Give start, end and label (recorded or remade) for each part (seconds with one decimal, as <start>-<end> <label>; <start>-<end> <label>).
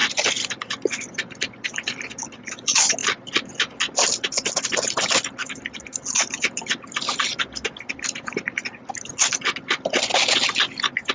0.0-11.1 recorded